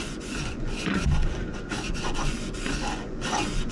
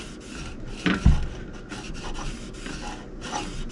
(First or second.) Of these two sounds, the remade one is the first